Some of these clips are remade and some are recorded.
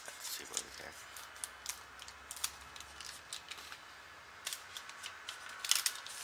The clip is recorded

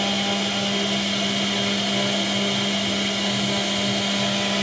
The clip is recorded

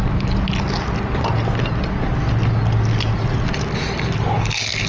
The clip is recorded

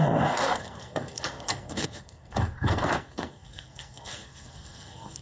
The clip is remade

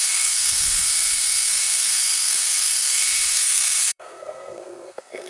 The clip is remade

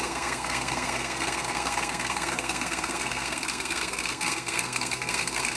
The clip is remade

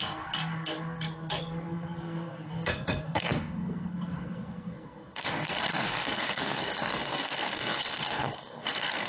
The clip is remade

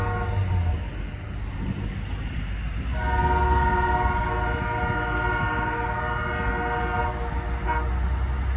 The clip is recorded